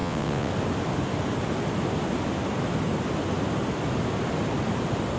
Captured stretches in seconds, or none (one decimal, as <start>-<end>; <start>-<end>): 0.5-5.2